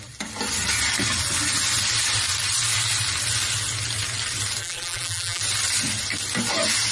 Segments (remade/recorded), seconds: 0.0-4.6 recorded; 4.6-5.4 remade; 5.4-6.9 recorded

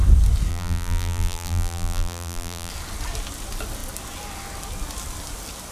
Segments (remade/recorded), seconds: 0.0-0.5 recorded; 0.5-2.7 remade; 2.7-5.7 recorded

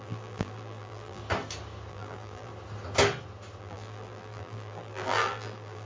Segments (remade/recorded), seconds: 0.0-1.2 remade; 1.2-1.9 recorded; 1.9-2.5 remade; 2.5-3.6 recorded; 3.6-5.9 remade

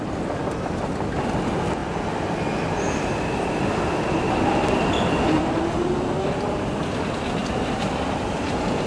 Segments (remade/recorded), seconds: 0.0-7.4 recorded; 7.4-8.2 remade; 8.2-8.9 recorded

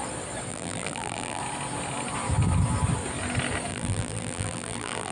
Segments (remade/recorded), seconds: 0.0-0.5 recorded; 0.5-1.4 remade; 1.4-3.7 recorded; 3.7-5.1 remade

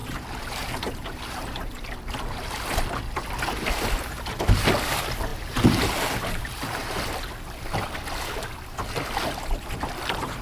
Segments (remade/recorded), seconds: 0.0-2.5 remade; 2.5-5.3 recorded; 5.3-7.1 remade; 7.1-10.4 recorded

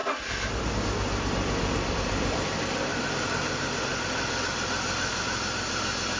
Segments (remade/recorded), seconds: 0.0-6.2 recorded